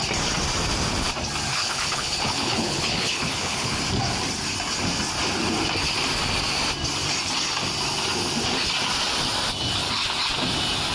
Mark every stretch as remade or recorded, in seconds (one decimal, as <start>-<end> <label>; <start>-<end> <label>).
0.0-1.5 recorded; 1.5-3.8 remade; 3.8-10.9 recorded